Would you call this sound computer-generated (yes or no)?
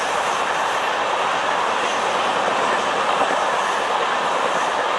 no